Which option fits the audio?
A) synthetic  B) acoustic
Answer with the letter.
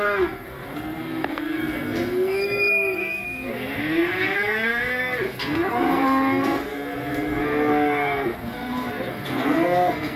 A